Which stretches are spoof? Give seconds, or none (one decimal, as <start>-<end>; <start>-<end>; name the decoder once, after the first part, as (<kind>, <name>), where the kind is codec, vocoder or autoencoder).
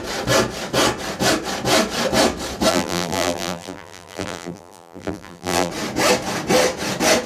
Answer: 2.7-5.7 (vocoder, BigVGAN v2)